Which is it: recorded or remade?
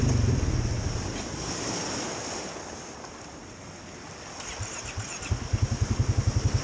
recorded